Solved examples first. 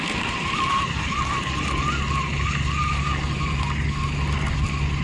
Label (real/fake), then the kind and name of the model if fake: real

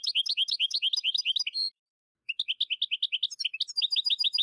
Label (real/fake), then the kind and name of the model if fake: real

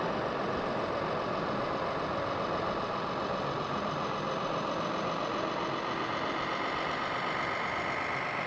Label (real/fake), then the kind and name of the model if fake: real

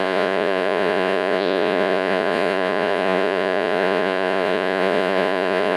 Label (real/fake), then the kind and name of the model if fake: fake, vocoder, Vocos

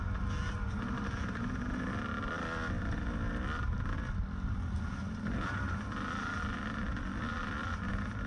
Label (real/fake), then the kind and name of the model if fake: real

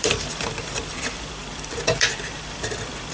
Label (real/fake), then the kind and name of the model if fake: fake, vocoder, BigVGAN v2